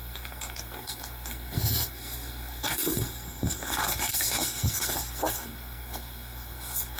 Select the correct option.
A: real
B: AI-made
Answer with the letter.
B